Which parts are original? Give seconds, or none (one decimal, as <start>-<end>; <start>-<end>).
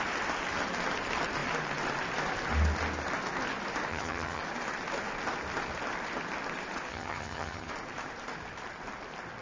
0.0-3.9; 4.4-6.9; 7.7-9.4